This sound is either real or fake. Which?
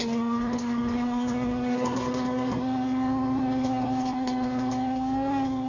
fake